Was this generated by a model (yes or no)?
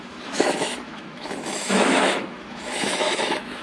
yes